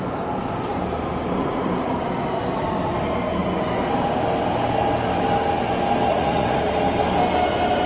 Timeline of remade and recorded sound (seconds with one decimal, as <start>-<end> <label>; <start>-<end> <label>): 0.0-6.1 recorded; 6.1-6.7 remade; 6.7-7.9 recorded